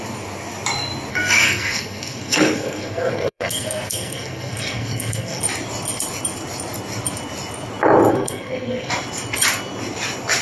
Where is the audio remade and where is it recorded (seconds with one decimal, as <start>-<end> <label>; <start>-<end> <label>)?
0.0-1.1 recorded; 1.1-5.4 remade; 5.4-8.1 recorded; 8.1-8.9 remade; 8.9-10.4 recorded